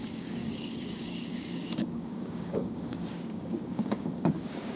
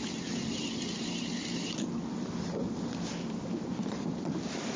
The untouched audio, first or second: second